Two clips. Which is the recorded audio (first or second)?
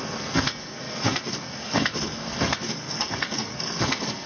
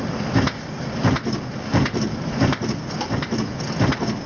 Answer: second